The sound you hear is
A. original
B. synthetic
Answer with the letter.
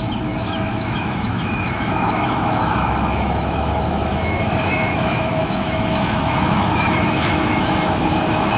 B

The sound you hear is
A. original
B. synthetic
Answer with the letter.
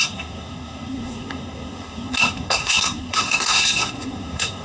B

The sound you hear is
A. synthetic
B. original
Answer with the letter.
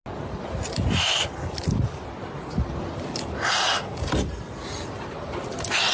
B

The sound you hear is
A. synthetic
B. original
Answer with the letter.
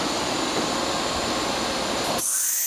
A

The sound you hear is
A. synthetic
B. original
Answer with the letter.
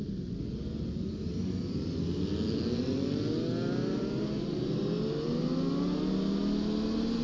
B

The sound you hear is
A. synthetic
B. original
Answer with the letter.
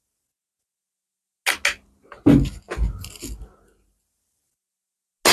B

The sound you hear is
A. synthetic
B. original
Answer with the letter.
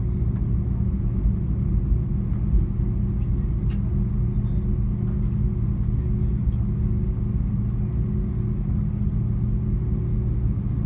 B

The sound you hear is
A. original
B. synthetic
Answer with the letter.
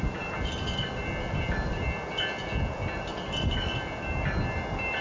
A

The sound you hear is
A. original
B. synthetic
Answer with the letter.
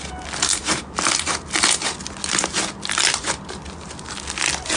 A